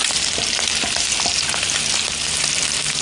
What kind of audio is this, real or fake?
fake